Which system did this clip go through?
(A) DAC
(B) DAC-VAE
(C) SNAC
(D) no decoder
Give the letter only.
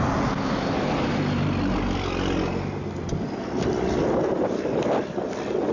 D